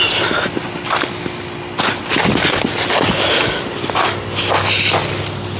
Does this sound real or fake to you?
real